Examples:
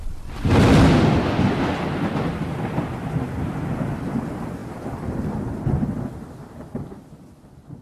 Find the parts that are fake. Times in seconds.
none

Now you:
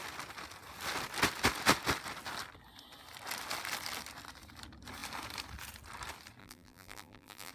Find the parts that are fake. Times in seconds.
6.4-7.5 (vocoder, BigVGAN v2)

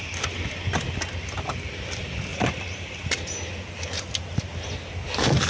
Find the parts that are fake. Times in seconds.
2.3-3.3 (vocoder, BigVGAN v2)